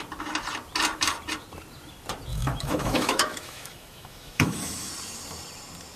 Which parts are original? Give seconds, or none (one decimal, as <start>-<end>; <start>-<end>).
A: 0.0-2.3; 4.9-6.0